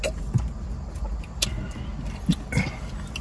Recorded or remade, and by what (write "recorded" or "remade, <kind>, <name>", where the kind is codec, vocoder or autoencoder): recorded